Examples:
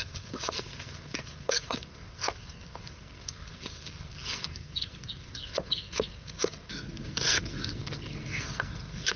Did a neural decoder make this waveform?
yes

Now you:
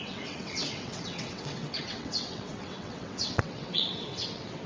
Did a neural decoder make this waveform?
yes